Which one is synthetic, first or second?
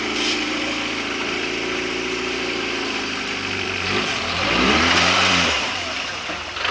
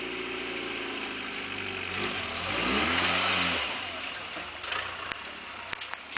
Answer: first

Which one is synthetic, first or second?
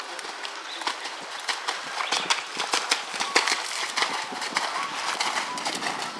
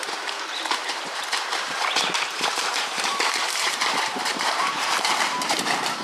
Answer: second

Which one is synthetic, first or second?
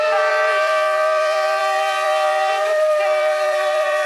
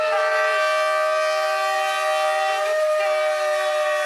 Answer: first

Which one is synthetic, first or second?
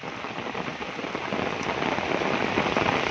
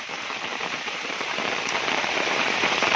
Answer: second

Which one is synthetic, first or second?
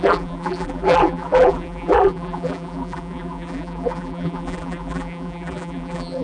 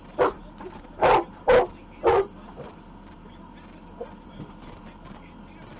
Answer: first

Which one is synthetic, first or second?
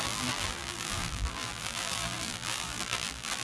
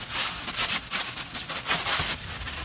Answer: first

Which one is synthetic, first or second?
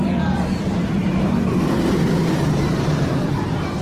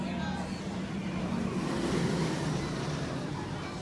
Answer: first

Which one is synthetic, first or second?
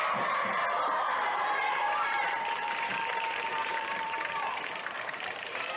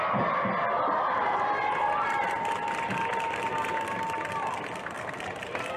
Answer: first